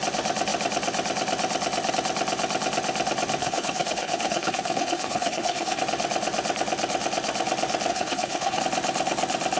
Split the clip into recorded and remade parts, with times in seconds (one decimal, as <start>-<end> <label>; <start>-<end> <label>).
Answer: 0.0-3.4 recorded; 3.4-5.8 remade; 5.8-7.9 recorded; 7.9-8.6 remade; 8.6-9.6 recorded